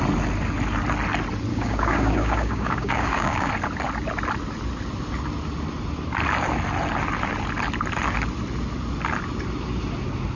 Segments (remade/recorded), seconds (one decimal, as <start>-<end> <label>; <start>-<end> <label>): 0.0-1.5 recorded; 1.5-3.5 remade; 3.5-10.4 recorded